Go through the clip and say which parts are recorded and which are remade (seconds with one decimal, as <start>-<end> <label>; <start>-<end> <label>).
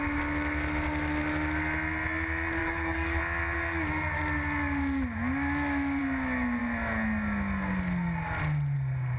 0.0-2.6 recorded; 2.6-3.2 remade; 3.2-9.2 recorded